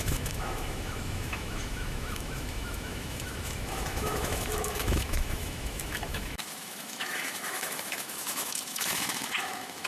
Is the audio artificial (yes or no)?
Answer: yes